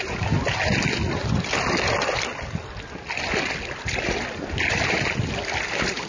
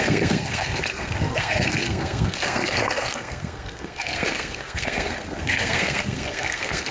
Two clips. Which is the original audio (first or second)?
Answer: first